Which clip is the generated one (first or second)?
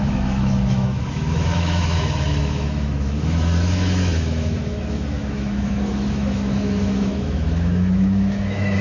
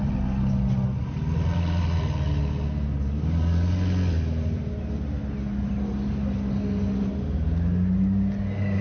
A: first